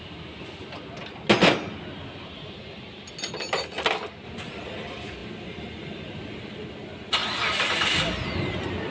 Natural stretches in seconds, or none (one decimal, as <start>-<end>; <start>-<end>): 0.0-8.9